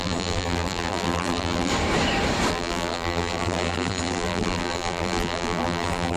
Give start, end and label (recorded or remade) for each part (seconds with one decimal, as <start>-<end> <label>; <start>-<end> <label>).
0.0-1.7 remade; 1.7-2.5 recorded; 2.5-6.2 remade